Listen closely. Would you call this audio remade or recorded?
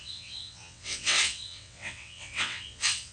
remade